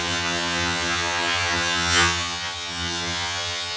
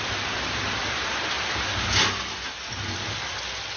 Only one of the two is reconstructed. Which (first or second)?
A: first